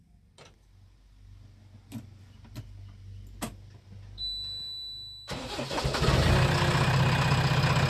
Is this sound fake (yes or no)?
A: no